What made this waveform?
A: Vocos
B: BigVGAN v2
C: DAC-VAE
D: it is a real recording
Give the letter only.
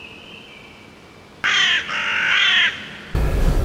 D